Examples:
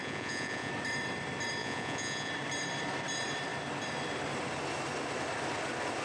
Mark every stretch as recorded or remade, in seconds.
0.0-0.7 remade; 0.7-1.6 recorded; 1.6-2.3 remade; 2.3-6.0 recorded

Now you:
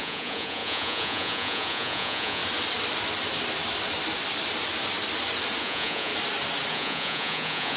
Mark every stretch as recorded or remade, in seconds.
0.0-2.4 remade; 2.4-5.6 recorded; 5.6-6.1 remade; 6.1-6.7 recorded; 6.7-7.8 remade

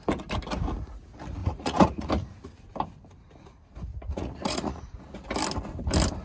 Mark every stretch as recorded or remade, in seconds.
0.0-1.4 recorded; 1.4-2.1 remade; 2.1-3.9 recorded; 3.9-5.0 remade; 5.0-6.2 recorded

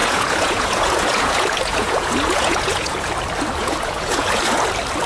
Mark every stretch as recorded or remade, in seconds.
0.0-3.1 remade; 3.1-3.6 recorded; 3.6-4.4 remade; 4.4-5.1 recorded

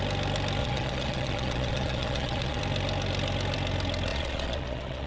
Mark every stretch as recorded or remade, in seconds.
0.0-0.6 recorded; 0.6-2.6 remade; 2.6-4.1 recorded; 4.1-5.1 remade

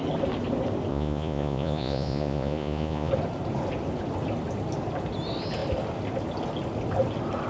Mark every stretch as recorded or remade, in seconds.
0.0-0.9 recorded; 0.9-3.1 remade; 3.1-7.5 recorded